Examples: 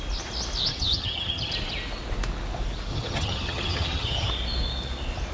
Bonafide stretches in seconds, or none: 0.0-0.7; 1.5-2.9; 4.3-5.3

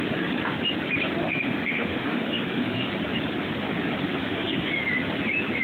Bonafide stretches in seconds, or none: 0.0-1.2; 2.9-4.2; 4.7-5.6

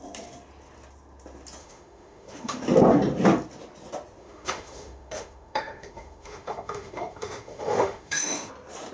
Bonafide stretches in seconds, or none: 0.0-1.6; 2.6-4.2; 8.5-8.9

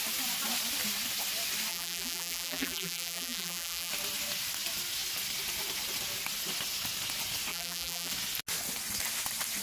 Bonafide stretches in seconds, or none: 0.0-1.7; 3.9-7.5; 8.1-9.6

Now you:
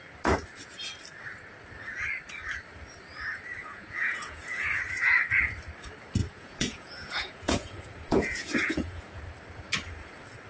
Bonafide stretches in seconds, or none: 0.0-3.6; 4.7-6.2; 9.2-10.5

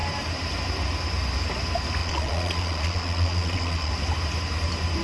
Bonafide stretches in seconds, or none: 0.0-2.0; 3.9-5.0

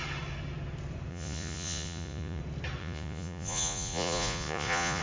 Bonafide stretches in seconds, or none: 0.0-1.1; 2.4-2.8